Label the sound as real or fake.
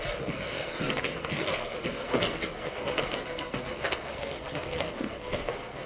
fake